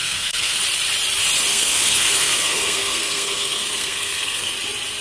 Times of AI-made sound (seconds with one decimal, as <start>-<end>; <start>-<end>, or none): 0.0-0.6; 1.5-4.5